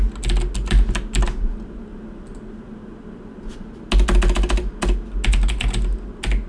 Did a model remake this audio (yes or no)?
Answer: no